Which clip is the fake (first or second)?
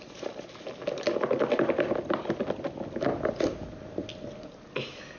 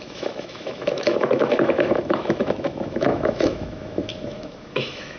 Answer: second